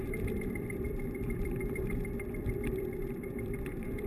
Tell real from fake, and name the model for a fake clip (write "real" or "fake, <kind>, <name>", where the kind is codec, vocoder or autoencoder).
fake, vocoder, BigVGAN v2